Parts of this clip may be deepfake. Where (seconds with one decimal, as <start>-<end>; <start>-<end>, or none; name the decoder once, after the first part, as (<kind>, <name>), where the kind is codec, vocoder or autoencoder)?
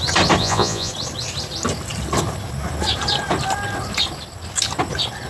0.4-0.9 (vocoder, Vocos)